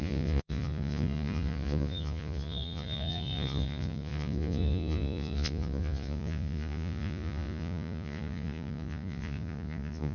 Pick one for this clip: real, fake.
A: fake